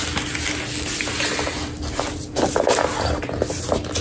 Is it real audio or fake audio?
real